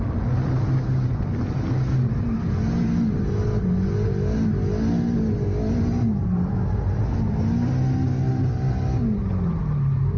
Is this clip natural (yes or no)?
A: yes